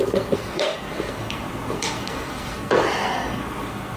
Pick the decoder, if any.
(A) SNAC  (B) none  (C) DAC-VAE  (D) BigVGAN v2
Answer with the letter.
A